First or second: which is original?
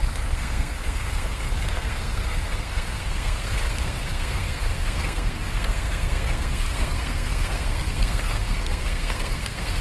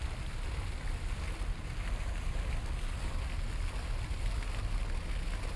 second